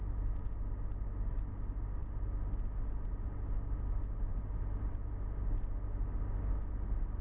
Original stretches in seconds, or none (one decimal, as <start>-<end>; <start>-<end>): 0.0-7.2